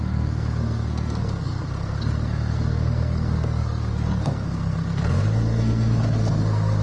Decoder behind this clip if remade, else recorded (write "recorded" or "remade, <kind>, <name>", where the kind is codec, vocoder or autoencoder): remade, codec, SNAC